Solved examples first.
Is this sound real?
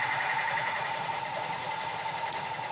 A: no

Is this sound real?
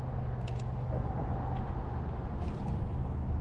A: yes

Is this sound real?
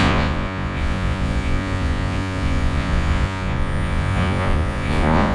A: no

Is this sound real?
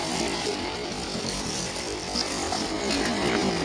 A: yes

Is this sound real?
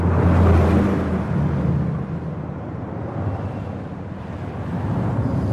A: yes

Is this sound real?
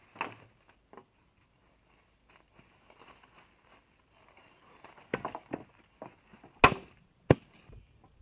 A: yes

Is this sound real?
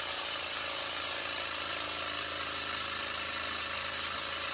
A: yes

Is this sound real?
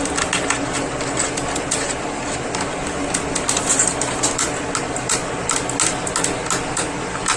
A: yes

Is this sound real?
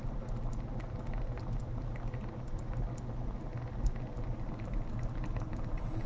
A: yes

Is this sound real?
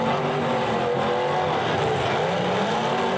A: yes